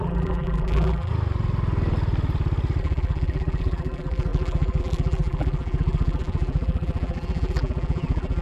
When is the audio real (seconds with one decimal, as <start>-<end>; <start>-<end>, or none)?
1.1-2.8